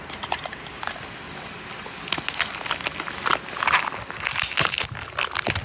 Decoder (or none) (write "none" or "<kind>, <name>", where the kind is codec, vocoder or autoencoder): none